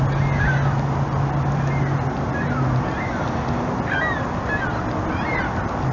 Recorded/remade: recorded